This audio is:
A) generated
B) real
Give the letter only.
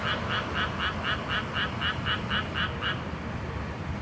B